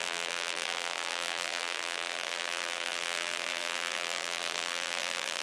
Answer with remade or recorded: remade